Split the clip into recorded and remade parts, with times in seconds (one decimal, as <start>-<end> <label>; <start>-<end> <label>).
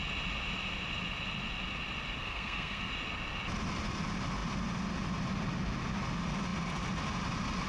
0.0-2.2 recorded; 2.2-2.9 remade; 2.9-7.7 recorded